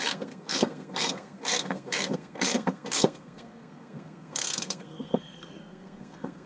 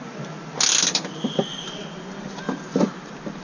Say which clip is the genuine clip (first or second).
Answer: second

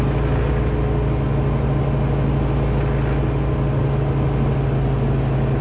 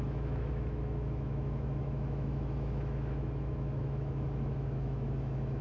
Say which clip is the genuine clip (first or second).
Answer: first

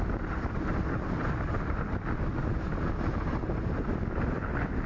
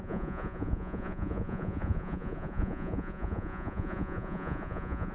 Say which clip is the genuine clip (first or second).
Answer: first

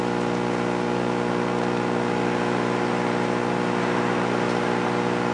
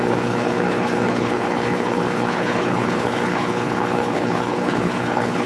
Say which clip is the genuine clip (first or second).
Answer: first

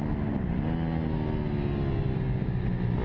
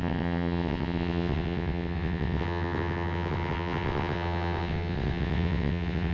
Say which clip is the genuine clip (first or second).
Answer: first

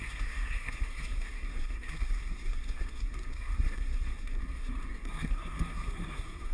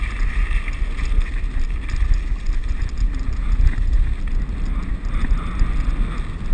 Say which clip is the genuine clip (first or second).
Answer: second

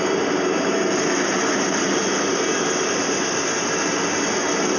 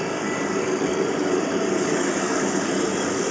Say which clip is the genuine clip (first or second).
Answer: first